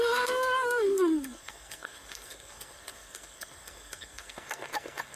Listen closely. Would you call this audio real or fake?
fake